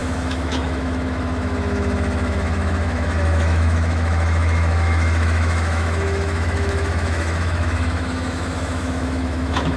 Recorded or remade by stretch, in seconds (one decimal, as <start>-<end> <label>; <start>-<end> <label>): 0.0-9.8 remade